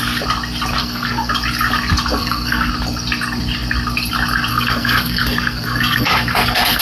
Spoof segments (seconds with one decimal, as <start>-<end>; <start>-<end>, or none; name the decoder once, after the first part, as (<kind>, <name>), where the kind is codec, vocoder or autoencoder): 0.8-1.3 (codec, SNAC); 2.1-2.7; 4.5-6.8